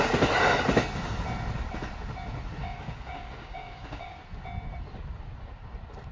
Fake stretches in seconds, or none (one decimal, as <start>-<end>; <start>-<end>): 2.6-4.2